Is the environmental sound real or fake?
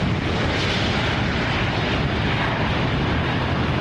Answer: real